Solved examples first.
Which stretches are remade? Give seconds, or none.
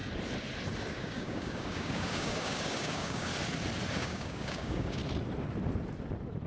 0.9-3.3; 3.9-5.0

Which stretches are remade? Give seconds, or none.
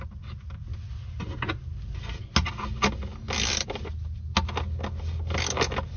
none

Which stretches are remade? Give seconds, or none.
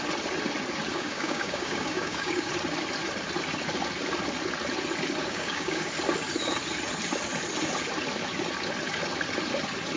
0.9-2.5; 5.2-5.9